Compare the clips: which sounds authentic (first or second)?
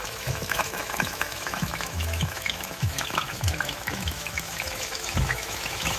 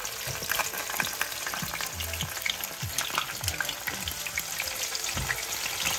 second